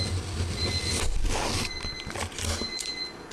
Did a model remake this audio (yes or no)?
no